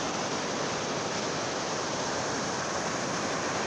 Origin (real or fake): fake